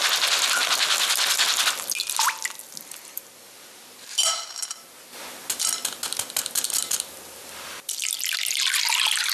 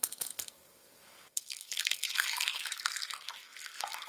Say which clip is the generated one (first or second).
second